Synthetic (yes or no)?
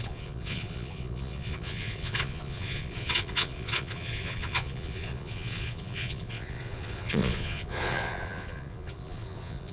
yes